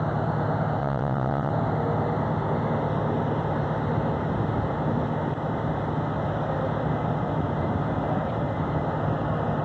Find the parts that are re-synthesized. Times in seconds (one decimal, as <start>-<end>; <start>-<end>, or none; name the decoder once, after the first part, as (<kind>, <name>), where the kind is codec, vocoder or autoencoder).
0.8-1.5 (vocoder, WaveNeXt)

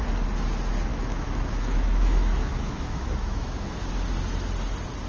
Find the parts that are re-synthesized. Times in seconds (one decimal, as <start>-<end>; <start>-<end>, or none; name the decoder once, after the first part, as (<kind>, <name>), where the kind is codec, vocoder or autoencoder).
0.9-3.9 (autoencoder, DAC-VAE)

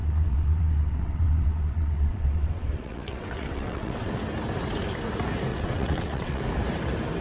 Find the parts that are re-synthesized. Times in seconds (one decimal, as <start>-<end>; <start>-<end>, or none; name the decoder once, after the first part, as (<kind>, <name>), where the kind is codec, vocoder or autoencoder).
0.0-4.1 (vocoder, WaveNeXt); 5.5-6.4